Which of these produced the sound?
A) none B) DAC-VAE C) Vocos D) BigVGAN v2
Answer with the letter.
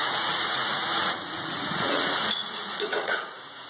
C